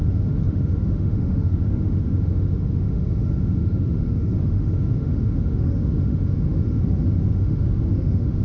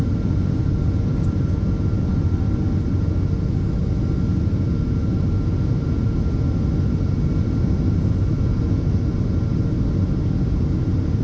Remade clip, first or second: first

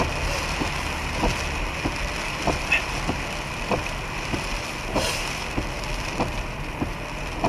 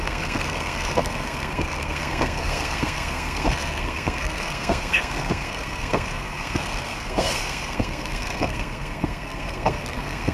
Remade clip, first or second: second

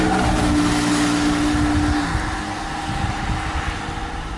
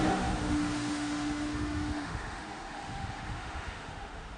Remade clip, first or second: second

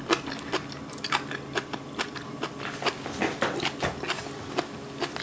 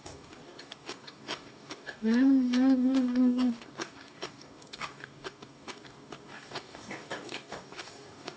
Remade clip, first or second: second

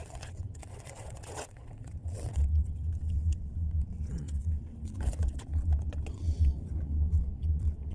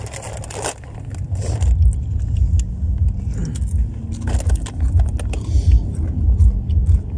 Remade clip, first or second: first